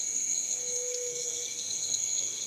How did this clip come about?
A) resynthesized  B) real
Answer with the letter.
A